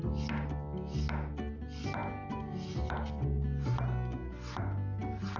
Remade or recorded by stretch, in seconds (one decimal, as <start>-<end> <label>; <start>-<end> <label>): 0.0-5.4 recorded

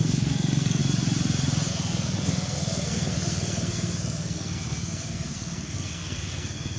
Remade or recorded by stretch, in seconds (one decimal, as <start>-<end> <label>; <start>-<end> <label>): 0.0-0.8 remade; 0.8-1.7 recorded; 1.7-6.8 remade

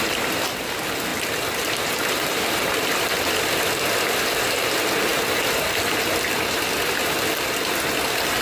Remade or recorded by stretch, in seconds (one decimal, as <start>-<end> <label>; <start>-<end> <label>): 0.0-8.4 recorded

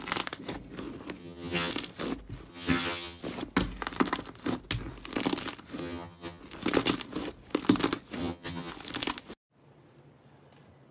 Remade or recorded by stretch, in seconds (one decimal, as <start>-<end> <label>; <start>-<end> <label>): 0.0-1.2 recorded; 1.2-1.7 remade; 1.7-2.5 recorded; 2.5-3.2 remade; 3.2-5.8 recorded; 5.8-6.4 remade; 6.4-8.2 recorded; 8.2-8.7 remade; 8.7-10.9 recorded

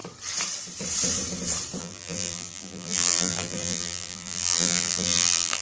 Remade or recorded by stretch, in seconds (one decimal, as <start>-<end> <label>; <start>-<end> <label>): 0.0-1.8 recorded; 1.8-5.6 remade

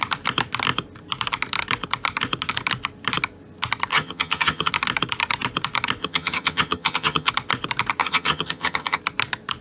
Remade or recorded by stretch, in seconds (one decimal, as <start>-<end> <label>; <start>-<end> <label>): 0.0-3.9 recorded; 3.9-4.7 remade; 4.7-6.0 recorded; 6.0-7.3 remade; 7.3-8.0 recorded; 8.0-9.0 remade; 9.0-9.6 recorded

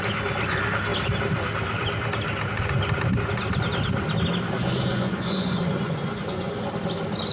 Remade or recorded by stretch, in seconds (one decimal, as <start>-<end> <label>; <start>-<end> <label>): 0.0-4.9 recorded; 4.9-6.7 remade; 6.7-7.3 recorded